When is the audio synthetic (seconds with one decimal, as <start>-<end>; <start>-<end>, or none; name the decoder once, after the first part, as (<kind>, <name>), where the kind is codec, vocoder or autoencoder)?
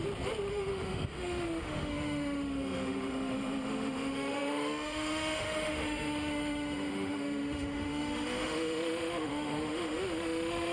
0.5-10.7 (autoencoder, DAC-VAE)